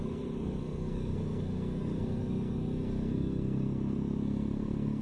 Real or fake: fake